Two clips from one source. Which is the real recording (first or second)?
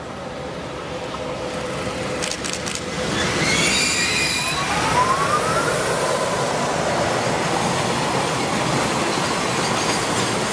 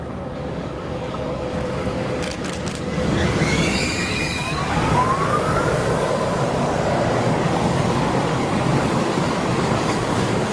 first